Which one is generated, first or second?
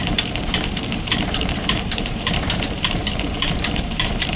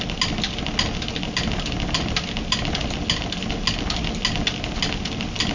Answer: first